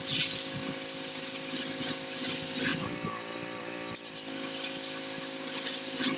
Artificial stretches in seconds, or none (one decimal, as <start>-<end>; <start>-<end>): none